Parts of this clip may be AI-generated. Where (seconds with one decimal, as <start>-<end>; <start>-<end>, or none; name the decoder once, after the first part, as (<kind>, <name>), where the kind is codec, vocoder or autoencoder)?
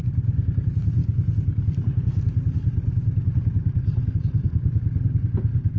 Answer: none